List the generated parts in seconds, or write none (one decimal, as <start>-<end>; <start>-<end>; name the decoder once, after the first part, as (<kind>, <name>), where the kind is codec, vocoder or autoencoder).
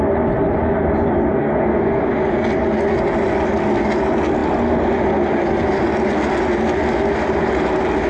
1.3-2.0 (codec, SNAC)